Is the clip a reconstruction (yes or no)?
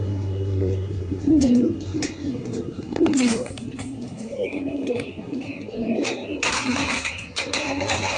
yes